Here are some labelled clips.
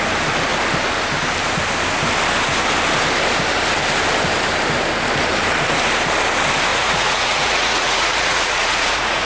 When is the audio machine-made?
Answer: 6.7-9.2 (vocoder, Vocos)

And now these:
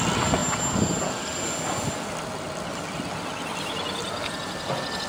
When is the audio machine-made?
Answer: none